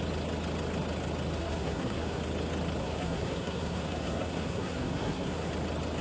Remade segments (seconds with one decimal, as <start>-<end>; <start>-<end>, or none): 1.4-2.2; 2.8-5.5